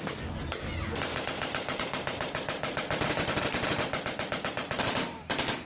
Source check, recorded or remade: recorded